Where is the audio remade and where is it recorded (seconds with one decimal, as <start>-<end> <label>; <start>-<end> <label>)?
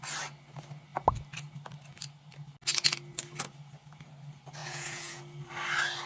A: 0.0-4.6 recorded; 4.6-5.2 remade; 5.2-6.1 recorded